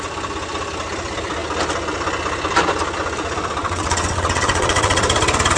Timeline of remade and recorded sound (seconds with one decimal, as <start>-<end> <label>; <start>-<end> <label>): 0.0-3.6 recorded; 3.6-5.0 remade; 5.0-5.6 recorded